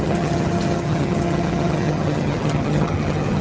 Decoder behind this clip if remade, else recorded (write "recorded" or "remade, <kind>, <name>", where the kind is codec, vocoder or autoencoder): remade, vocoder, HiFi-GAN